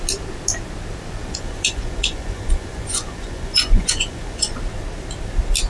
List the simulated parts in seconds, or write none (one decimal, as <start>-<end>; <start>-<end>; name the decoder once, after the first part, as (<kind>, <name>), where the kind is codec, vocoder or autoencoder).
1.2-4.6 (vocoder, Vocos)